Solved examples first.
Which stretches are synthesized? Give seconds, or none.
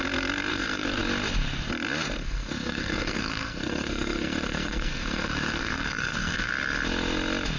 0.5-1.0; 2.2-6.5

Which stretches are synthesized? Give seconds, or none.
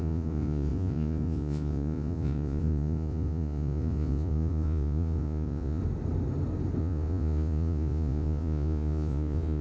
0.0-5.8; 6.8-9.6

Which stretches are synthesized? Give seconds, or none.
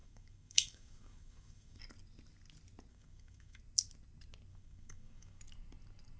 0.0-1.8; 2.9-3.6; 4.5-5.4